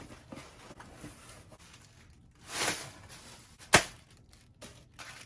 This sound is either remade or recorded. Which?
recorded